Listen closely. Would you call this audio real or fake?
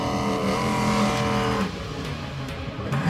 real